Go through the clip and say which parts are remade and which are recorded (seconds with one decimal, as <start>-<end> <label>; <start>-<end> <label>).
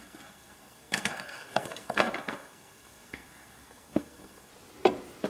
0.0-4.5 remade; 4.5-5.3 recorded